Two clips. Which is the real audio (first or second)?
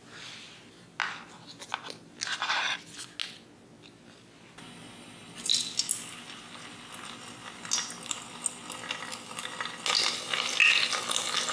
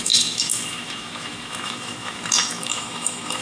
first